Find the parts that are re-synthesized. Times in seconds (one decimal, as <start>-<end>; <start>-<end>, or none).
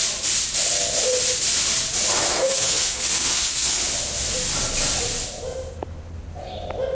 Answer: 2.3-3.8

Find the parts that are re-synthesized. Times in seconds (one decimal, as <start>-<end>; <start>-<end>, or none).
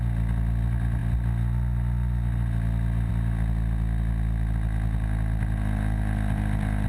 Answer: none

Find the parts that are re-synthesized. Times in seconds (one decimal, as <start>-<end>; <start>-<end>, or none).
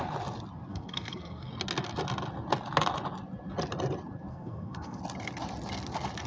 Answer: 0.7-1.5; 4.3-5.0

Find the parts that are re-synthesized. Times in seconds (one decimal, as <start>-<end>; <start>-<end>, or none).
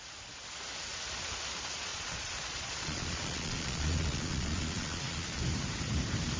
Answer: 1.9-5.4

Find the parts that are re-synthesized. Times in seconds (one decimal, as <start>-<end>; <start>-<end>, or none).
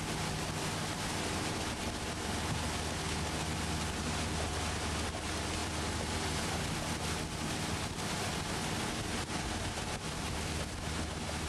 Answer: none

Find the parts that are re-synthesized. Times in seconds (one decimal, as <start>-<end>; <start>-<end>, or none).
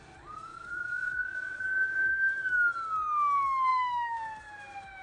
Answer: 0.5-2.3; 3.7-4.2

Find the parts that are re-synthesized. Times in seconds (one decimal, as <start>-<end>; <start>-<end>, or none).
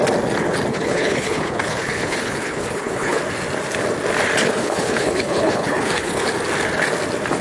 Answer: 0.7-3.2; 4.4-6.3